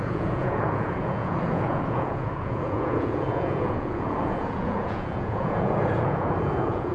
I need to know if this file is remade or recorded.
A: remade